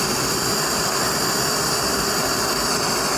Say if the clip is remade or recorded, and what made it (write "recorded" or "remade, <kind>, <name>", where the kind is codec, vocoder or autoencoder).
recorded